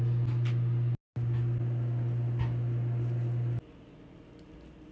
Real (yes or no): yes